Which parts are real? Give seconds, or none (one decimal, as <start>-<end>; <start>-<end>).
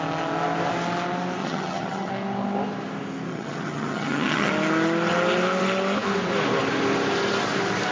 0.0-1.4; 2.1-3.3; 4.5-7.9